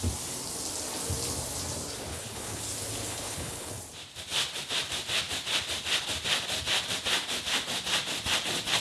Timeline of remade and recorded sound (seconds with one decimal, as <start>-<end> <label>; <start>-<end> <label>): 0.0-2.1 recorded; 2.1-2.6 remade; 2.6-3.1 recorded; 3.1-3.8 remade; 3.8-8.8 recorded